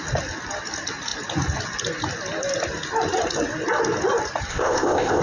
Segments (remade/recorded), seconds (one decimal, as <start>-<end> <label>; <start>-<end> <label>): 0.0-4.5 recorded; 4.5-5.2 remade